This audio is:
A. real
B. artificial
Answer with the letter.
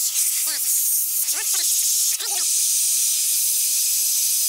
A